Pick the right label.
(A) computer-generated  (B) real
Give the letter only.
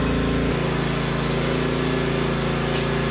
B